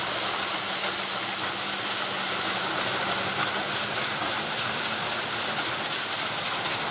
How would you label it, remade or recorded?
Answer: recorded